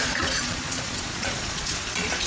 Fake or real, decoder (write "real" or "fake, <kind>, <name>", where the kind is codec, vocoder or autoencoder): fake, vocoder, Vocos